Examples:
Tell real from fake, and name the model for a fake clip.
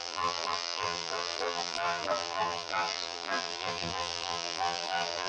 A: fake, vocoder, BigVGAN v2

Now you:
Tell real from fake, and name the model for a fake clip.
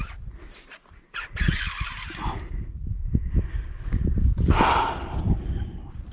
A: real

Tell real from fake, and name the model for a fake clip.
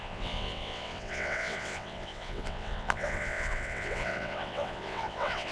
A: fake, vocoder, WaveNeXt